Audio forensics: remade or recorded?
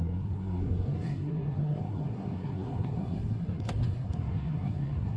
remade